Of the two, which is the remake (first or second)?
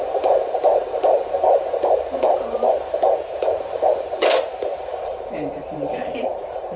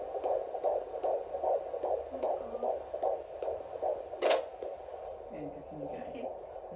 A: first